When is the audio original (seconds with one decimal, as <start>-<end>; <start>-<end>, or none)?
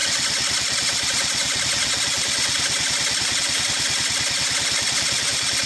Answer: 0.0-5.7